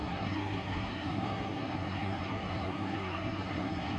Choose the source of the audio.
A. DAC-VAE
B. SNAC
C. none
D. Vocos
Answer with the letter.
B